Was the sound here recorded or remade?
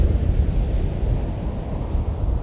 recorded